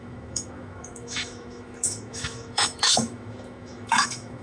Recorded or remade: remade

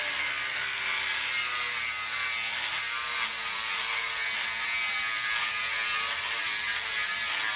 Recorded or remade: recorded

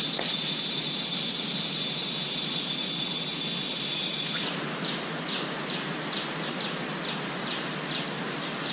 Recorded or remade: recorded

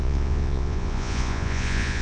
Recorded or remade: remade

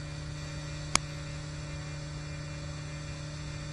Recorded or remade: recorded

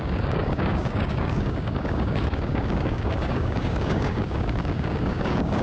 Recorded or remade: remade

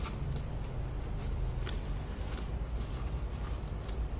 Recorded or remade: recorded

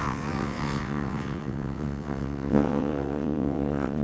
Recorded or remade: remade